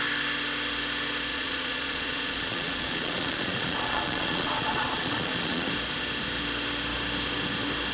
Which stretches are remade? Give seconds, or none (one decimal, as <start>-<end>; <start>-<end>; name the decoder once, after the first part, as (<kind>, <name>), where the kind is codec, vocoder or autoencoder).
1.3-5.7 (vocoder, Vocos)